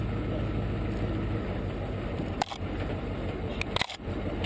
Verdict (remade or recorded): recorded